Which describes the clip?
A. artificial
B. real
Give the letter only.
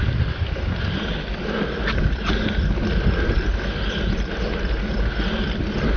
B